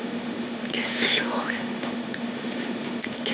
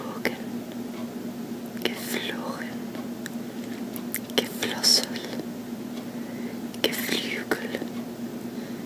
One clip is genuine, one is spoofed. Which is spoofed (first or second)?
first